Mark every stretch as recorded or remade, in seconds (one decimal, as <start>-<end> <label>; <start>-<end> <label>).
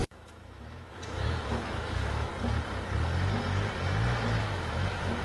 0.0-2.3 remade; 2.3-4.4 recorded; 4.4-5.2 remade